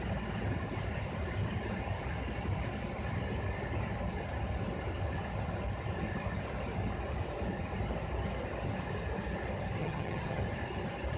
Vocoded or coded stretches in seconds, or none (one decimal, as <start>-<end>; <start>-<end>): 9.8-10.4